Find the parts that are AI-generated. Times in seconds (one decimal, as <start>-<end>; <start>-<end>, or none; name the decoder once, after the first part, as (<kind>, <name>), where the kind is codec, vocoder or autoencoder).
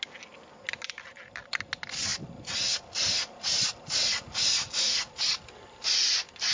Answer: none